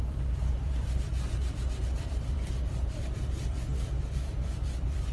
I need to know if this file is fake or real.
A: fake